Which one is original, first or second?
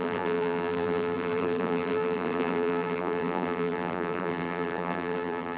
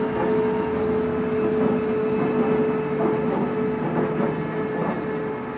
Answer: second